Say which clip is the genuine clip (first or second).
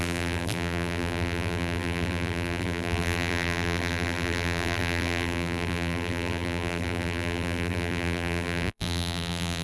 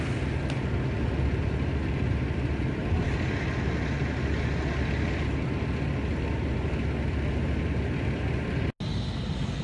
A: second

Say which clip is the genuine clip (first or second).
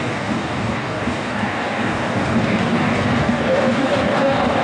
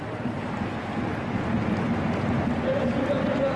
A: second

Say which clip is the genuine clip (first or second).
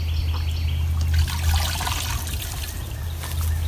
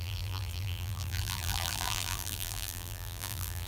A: first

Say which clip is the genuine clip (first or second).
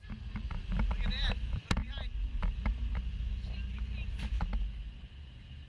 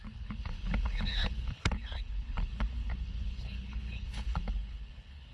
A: first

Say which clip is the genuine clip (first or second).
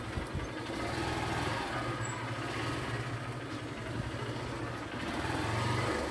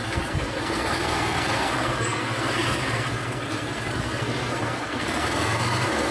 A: first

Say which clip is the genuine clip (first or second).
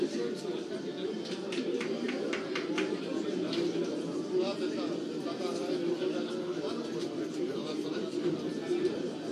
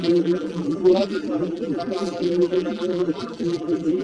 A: first